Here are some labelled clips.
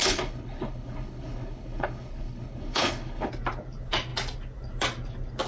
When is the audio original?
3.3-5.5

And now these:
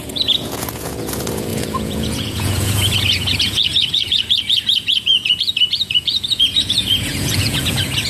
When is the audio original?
none

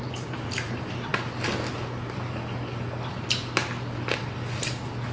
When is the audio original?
1.1-4.2

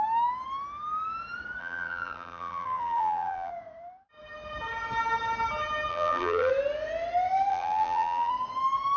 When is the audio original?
0.0-1.6; 3.5-5.9; 6.5-7.5; 8.3-9.0

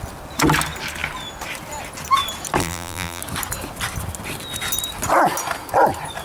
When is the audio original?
0.0-2.6; 3.2-6.2